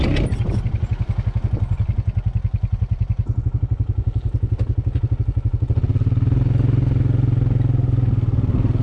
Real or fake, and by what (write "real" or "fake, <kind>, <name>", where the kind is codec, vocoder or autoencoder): real